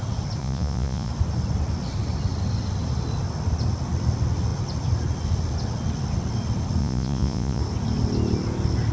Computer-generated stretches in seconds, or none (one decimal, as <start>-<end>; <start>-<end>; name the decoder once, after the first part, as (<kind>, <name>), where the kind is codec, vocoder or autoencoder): 0.4-1.1 (vocoder, Vocos); 6.8-7.6